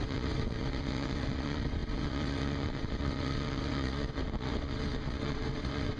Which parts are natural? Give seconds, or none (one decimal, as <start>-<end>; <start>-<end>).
none